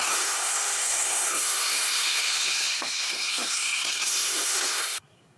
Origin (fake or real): fake